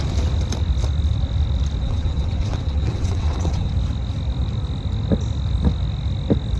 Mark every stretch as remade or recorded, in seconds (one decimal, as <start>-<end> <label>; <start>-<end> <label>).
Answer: 0.0-1.8 recorded; 1.8-3.7 remade; 3.7-6.6 recorded